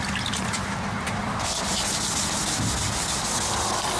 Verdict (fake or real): real